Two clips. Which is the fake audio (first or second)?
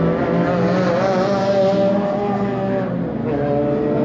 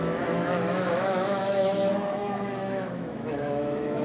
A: second